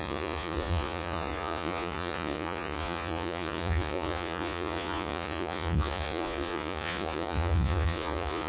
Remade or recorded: remade